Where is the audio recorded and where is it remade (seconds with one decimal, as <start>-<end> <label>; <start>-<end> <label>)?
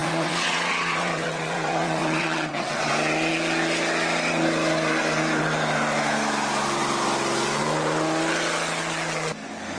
0.0-2.9 remade; 2.9-9.8 recorded